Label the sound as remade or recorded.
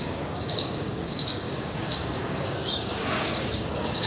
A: remade